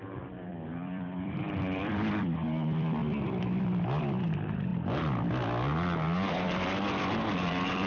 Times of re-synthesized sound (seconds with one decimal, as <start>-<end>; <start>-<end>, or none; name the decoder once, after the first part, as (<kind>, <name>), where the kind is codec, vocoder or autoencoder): 0.0-3.0 (vocoder, BigVGAN v2); 3.6-4.7; 6.3-7.9